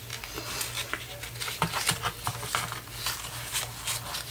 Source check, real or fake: real